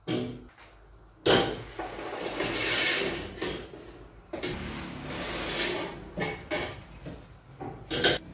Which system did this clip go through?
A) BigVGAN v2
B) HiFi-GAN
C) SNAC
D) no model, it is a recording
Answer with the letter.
D